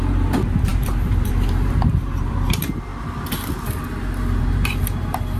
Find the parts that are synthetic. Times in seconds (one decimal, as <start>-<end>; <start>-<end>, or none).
0.0-2.9; 4.4-5.4

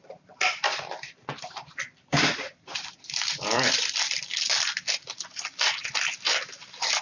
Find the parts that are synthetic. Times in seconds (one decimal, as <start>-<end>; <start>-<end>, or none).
0.0-4.2

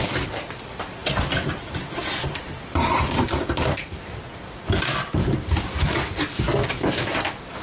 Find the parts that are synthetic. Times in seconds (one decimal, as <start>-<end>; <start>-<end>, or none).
none

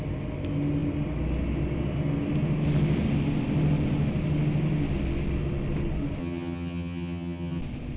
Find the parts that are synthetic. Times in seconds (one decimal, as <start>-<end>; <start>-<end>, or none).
6.2-7.6